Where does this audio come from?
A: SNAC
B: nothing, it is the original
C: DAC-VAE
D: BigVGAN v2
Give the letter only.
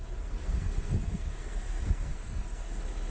A